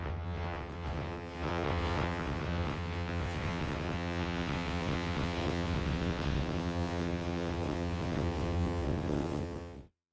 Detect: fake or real fake